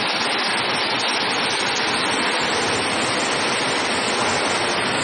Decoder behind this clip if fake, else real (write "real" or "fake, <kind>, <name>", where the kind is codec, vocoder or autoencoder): real